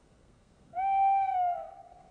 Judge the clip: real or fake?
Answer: fake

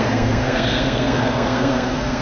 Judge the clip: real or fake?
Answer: fake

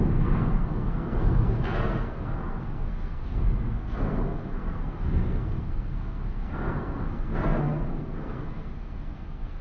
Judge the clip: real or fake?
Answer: fake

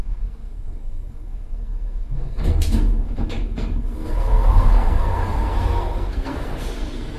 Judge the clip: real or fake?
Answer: fake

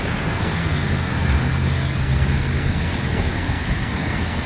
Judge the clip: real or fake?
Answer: fake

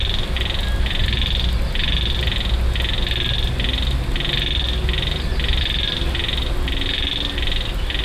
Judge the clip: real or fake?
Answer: real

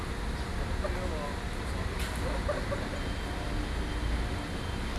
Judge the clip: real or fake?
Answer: real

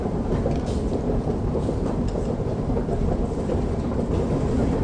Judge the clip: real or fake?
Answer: real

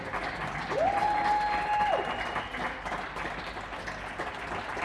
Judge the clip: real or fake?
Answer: real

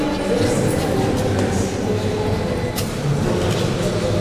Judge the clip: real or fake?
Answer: real